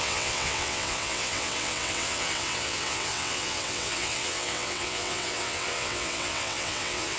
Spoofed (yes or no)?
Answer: yes